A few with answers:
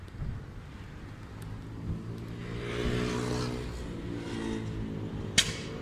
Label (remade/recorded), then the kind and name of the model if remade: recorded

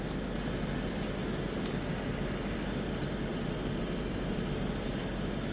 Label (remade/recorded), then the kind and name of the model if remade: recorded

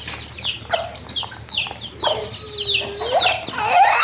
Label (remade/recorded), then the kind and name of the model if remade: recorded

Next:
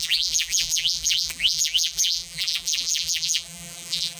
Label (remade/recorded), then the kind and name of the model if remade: remade, vocoder, BigVGAN v2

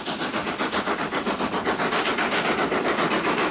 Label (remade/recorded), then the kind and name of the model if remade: recorded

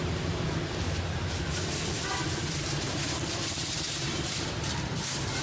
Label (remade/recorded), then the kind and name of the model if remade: remade, vocoder, BigVGAN v2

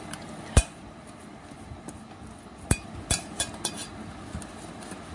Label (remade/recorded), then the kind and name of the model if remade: recorded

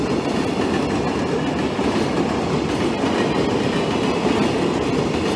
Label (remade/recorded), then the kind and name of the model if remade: recorded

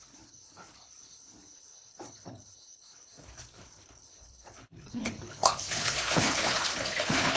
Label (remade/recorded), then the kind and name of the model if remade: remade, codec, HILCodec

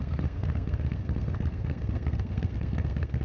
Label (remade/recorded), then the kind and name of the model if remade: remade, codec, SNAC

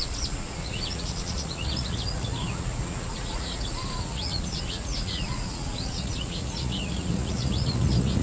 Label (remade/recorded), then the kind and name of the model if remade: remade, vocoder, Vocos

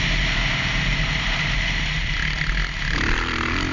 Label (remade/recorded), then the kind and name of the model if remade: recorded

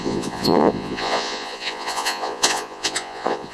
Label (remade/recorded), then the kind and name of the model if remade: remade, vocoder, Vocos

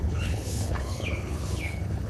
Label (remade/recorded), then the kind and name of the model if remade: remade, codec, HILCodec